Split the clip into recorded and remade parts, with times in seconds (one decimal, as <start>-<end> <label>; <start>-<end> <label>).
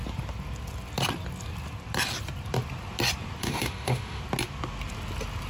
0.0-3.4 recorded; 3.4-4.2 remade; 4.2-5.5 recorded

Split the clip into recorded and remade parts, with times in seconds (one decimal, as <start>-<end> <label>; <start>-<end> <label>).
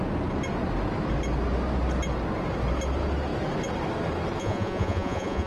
0.0-4.4 recorded; 4.4-5.5 remade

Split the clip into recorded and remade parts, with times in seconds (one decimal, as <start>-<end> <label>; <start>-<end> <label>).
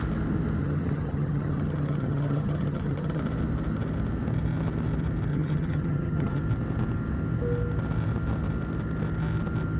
0.0-0.6 recorded; 0.6-3.2 remade; 3.2-5.3 recorded; 5.3-6.4 remade; 6.4-9.8 recorded